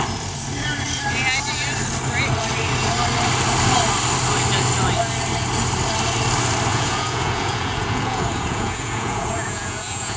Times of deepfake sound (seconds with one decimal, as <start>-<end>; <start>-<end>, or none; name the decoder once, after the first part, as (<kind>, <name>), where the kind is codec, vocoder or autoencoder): 6.7-10.2 (vocoder, Vocos)

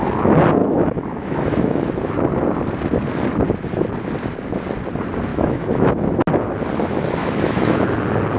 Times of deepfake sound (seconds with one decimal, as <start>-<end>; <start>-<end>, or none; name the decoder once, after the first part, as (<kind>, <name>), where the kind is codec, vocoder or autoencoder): 0.6-1.8 (autoencoder, DAC-VAE); 5.3-6.2; 7.2-7.8

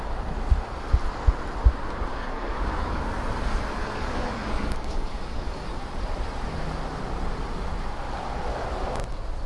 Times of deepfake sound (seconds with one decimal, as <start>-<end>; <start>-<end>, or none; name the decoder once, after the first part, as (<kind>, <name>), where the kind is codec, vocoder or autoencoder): 2.1-3.0 (codec, DAC); 3.8-5.8

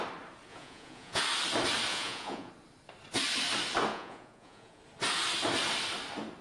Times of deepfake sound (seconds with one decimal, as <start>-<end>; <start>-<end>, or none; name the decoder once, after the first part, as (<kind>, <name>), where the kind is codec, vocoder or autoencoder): 0.5-1.2 (vocoder, Vocos); 1.9-2.5; 3.9-4.8